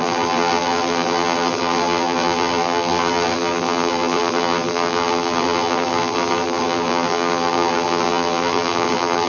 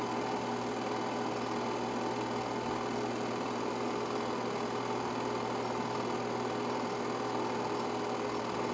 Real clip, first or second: second